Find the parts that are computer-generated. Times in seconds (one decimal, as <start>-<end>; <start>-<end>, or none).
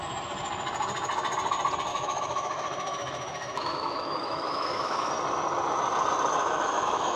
1.9-5.1; 6.4-7.2